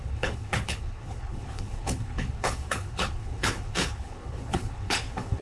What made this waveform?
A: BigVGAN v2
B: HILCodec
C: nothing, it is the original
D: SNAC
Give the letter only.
B